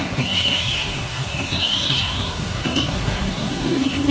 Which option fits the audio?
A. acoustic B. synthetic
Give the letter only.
B